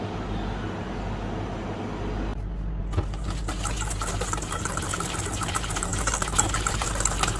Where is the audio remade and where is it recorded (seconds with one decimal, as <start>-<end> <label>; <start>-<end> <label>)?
0.0-7.4 recorded